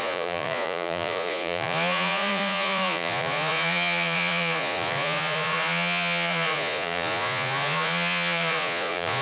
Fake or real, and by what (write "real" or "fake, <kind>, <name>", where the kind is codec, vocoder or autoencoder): fake, vocoder, Vocos